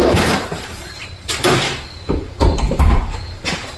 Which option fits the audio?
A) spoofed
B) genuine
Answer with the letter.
A